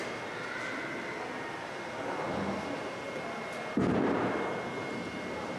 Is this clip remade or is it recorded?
recorded